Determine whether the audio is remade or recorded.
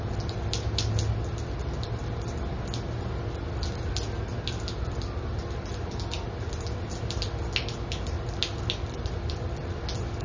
recorded